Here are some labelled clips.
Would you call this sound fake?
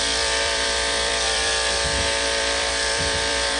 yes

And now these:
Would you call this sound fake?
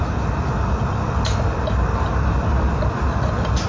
no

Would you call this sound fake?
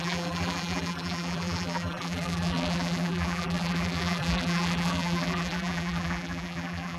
yes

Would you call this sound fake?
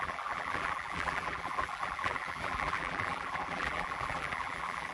yes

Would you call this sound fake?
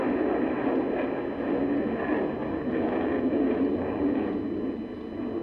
no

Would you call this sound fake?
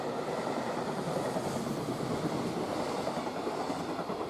no